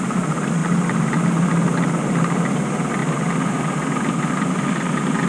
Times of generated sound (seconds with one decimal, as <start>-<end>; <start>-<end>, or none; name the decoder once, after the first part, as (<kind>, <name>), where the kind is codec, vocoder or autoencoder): none